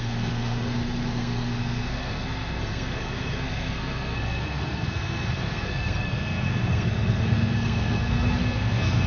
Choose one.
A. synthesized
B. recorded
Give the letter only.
A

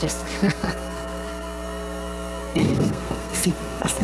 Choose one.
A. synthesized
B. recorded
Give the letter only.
A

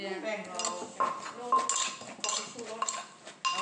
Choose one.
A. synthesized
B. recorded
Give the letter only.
B